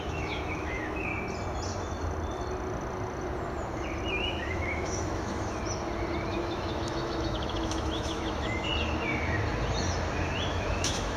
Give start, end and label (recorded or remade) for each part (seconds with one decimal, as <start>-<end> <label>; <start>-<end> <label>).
0.0-1.1 remade; 1.1-4.1 recorded; 4.1-5.6 remade; 5.6-6.3 recorded; 6.3-8.7 remade; 8.7-10.5 recorded; 10.5-11.2 remade